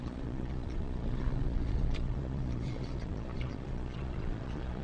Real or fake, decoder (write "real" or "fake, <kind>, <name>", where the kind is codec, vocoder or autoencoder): fake, vocoder, Vocos